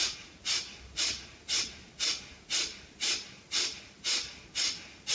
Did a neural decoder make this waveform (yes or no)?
no